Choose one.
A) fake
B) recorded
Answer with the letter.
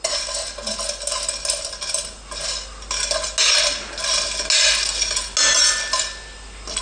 B